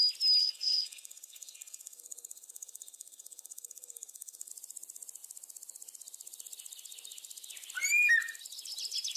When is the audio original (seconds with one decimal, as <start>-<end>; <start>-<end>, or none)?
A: 0.0-0.4; 4.5-9.2